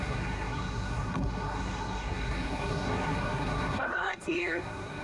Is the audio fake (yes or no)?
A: yes